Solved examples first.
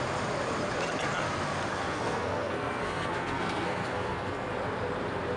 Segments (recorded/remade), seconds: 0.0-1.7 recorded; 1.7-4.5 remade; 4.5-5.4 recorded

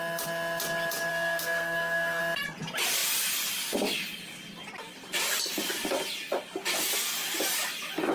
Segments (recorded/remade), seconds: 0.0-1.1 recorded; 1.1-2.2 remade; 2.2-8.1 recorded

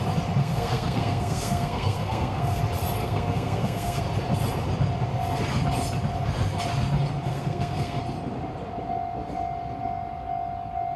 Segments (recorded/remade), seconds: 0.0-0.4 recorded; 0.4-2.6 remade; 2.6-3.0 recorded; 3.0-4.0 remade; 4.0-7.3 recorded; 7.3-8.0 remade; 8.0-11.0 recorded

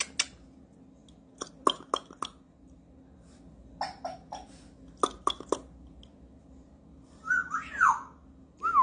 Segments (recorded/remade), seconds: 0.0-8.8 recorded